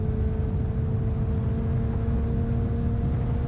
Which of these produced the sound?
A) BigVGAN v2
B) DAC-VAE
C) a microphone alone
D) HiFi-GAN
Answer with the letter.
C